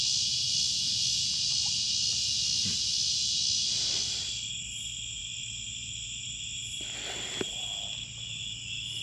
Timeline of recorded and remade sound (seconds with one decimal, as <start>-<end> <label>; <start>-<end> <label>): 0.0-5.2 recorded; 5.2-6.2 remade; 6.2-9.0 recorded